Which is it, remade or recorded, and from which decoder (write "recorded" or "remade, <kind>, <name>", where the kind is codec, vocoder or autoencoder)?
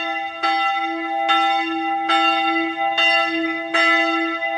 recorded